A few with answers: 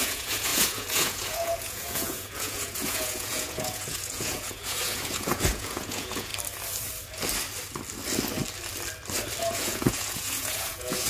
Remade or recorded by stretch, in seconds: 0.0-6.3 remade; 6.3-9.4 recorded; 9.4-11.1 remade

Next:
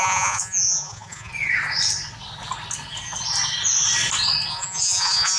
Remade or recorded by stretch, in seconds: 0.0-1.3 remade; 1.3-4.5 recorded; 4.5-5.4 remade

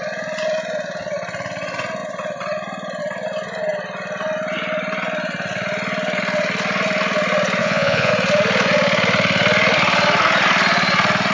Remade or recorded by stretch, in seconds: 0.0-7.6 recorded; 7.6-8.1 remade; 8.1-11.3 recorded